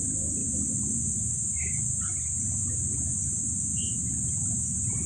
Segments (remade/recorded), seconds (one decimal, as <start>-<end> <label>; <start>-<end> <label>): 0.0-0.4 recorded; 0.4-2.0 remade; 2.0-5.1 recorded